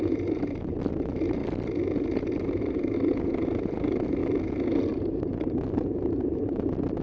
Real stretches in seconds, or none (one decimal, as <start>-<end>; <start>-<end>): 1.4-2.4; 4.2-5.0